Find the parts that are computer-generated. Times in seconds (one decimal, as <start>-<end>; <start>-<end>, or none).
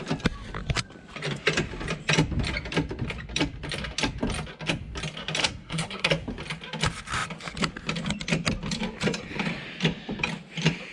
5.4-6.1